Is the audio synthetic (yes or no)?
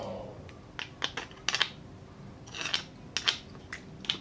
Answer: no